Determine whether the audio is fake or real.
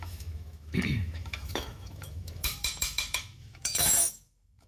fake